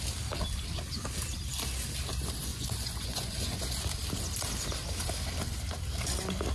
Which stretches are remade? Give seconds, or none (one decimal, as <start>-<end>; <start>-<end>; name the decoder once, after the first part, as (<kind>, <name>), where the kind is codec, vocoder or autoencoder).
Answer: 2.5-3.6 (vocoder, Vocos)